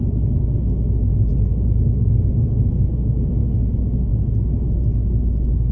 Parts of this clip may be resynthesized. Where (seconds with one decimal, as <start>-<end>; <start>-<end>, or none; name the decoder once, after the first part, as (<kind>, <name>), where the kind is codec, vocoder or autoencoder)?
none